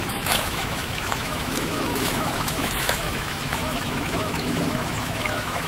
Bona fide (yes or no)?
no